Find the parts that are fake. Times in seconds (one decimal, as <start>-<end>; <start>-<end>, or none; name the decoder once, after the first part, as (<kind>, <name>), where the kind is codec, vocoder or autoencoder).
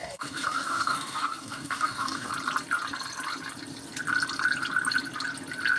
0.0-2.3 (codec, DAC)